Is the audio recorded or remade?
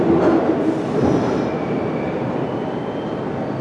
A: recorded